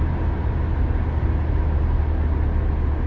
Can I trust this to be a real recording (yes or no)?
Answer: yes